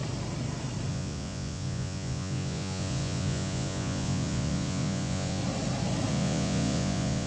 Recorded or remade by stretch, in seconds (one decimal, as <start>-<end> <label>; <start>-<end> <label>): 0.0-0.9 recorded; 0.9-5.4 remade; 5.4-6.1 recorded; 6.1-7.3 remade